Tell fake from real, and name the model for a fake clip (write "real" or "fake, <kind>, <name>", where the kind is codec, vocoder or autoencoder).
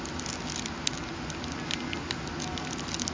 real